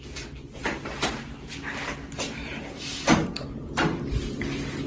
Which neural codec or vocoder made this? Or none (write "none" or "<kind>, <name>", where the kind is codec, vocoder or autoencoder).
none